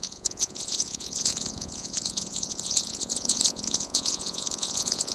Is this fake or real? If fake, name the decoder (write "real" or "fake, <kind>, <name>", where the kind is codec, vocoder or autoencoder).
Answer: fake, vocoder, Vocos